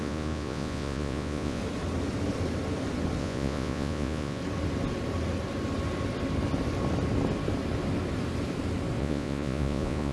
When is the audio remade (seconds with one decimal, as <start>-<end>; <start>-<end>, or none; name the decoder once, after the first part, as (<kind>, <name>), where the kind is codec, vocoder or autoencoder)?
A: 0.0-1.6 (vocoder, Vocos); 3.2-4.4; 9.0-10.1